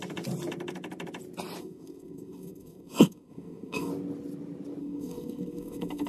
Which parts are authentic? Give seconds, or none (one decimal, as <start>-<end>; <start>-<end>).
0.0-1.6; 3.9-4.8